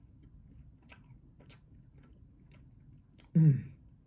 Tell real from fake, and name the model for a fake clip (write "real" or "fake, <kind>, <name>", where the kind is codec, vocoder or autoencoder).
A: real